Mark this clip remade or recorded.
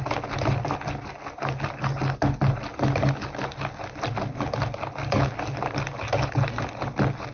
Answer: recorded